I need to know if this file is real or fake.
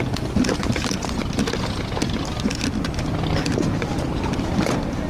real